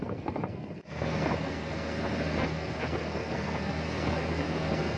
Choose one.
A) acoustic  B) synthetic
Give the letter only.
B